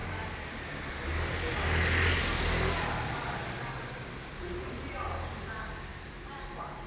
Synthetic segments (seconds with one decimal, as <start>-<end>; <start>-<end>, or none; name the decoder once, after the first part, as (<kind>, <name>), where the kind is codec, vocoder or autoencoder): 5.9-6.9 (vocoder, BigVGAN v2)